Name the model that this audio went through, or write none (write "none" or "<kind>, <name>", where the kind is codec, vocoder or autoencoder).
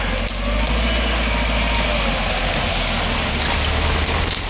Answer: none